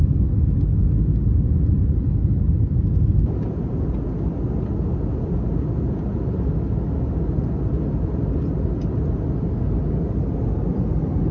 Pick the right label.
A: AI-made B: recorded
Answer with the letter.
B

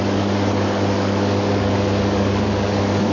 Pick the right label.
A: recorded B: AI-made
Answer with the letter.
B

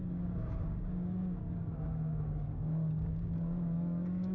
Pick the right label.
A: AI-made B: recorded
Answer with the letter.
A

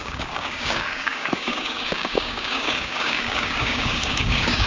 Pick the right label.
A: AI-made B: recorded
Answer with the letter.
A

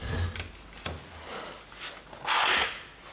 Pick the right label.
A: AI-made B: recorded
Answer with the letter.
B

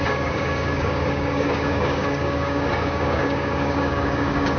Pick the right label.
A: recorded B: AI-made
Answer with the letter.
B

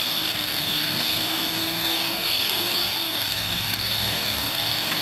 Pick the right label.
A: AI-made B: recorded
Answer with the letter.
A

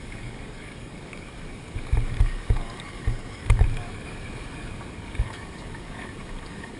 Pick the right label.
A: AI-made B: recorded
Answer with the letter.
A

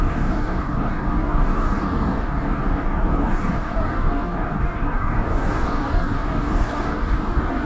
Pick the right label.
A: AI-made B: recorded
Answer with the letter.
A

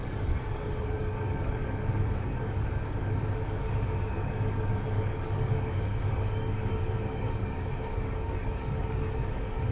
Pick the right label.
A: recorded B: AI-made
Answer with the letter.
B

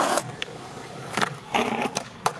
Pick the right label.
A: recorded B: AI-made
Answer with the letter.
B